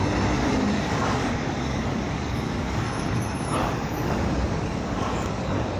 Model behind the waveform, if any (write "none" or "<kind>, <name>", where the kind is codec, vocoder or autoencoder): codec, DAC